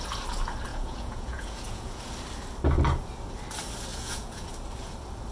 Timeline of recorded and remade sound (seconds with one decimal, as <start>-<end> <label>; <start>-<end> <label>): 0.0-0.7 recorded; 0.7-2.0 remade; 2.0-3.9 recorded; 3.9-4.5 remade; 4.5-5.3 recorded